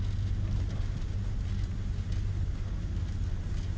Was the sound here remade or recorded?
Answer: recorded